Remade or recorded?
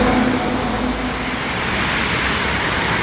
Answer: recorded